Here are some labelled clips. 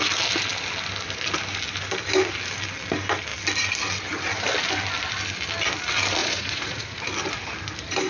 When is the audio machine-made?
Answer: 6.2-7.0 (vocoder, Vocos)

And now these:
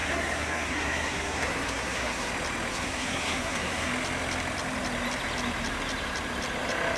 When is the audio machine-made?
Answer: 0.0-2.3 (codec, SNAC); 2.7-3.9